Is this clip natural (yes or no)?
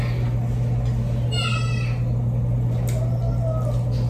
yes